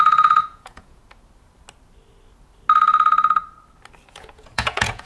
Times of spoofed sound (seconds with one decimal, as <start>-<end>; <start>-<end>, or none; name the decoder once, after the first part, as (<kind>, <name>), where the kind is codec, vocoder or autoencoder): 0.0-1.0 (vocoder, Vocos); 4.1-5.1